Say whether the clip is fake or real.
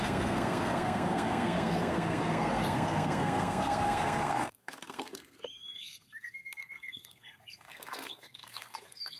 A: fake